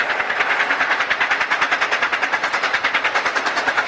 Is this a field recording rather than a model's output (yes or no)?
yes